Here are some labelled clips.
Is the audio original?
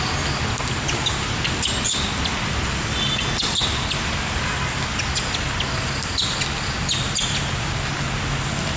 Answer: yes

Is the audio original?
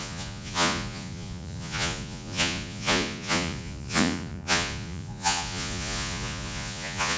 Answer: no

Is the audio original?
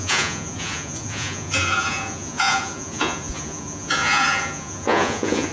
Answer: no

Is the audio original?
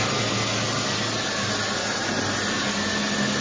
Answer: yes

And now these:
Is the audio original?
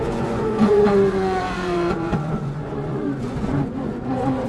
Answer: no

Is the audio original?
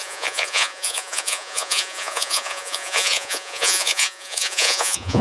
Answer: no